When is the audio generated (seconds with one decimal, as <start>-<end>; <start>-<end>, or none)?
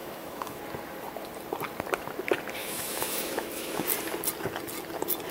0.0-0.6; 2.6-3.8